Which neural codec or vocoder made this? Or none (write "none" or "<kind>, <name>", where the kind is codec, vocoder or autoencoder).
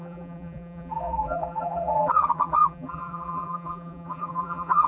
vocoder, BigVGAN v2